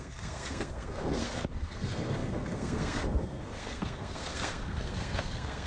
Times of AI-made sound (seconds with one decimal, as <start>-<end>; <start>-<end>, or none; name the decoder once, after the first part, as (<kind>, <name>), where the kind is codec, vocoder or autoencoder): 0.0-5.7 (codec, SNAC)